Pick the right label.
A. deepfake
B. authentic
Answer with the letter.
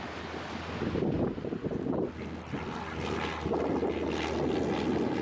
B